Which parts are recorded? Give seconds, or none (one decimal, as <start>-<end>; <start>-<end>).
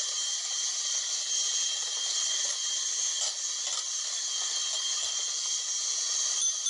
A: 0.0-6.7